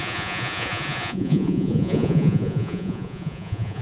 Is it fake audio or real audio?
fake